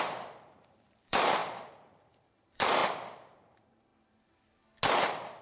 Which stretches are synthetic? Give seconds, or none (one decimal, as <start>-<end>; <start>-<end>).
0.0-2.8; 3.5-3.9